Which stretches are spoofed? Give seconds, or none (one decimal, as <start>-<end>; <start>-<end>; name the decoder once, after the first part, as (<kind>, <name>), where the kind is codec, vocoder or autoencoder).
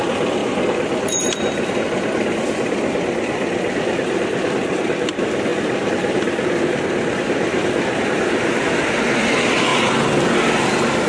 5.5-8.9 (vocoder, BigVGAN v2); 9.7-10.4